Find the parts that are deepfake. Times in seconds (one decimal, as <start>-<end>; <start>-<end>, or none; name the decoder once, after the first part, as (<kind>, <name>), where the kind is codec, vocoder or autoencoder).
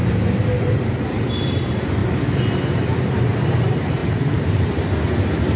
0.0-5.6 (vocoder, BigVGAN v2)